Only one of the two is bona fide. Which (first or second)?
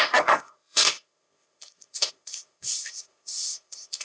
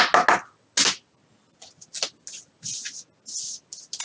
second